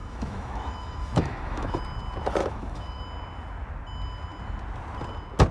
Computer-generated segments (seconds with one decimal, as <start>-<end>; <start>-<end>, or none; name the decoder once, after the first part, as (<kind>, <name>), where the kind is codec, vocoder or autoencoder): 0.0-1.8 (autoencoder, DAC-VAE); 2.4-3.0